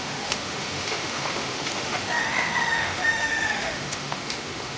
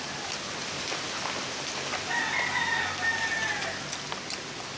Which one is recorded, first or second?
second